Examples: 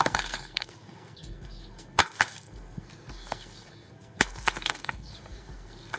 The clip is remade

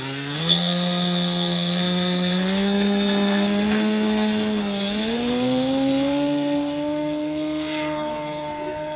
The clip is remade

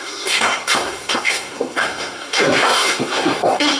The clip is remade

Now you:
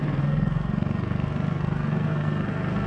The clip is remade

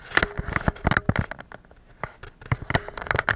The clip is recorded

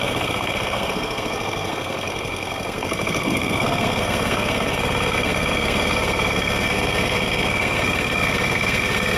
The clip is remade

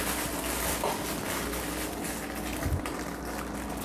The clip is recorded